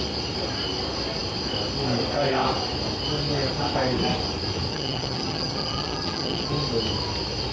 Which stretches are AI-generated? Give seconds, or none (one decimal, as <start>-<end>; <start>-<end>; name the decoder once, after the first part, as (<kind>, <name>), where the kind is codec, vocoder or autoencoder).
4.7-6.5 (vocoder, HiFi-GAN)